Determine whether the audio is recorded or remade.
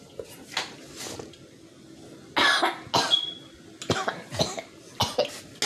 recorded